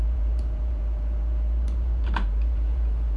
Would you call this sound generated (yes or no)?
yes